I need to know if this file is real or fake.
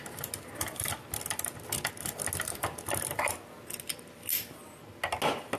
real